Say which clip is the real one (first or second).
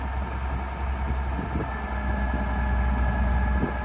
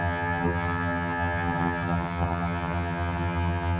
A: first